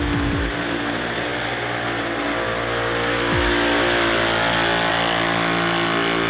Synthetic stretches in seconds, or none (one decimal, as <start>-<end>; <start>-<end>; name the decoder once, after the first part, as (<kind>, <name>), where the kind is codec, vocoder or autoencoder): none